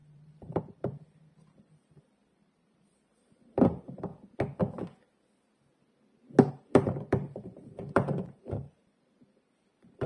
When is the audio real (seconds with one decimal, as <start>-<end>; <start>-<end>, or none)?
4.1-6.5